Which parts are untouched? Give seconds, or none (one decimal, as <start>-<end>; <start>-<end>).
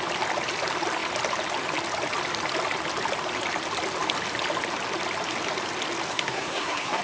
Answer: 0.0-6.1